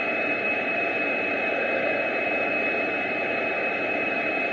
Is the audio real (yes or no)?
no